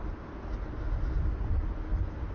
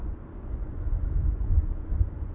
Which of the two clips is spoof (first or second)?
second